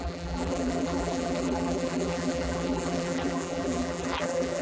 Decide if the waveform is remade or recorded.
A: remade